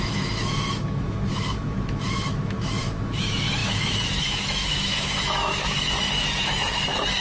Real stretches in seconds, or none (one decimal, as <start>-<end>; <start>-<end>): none